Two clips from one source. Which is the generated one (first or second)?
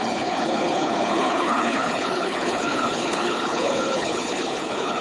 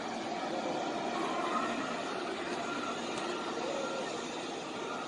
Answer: first